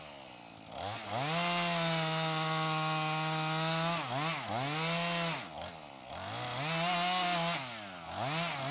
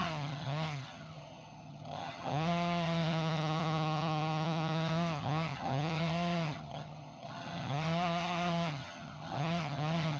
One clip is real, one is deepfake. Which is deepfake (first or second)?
second